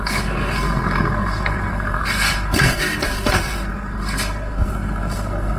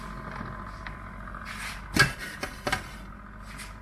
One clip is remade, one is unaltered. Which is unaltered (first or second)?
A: second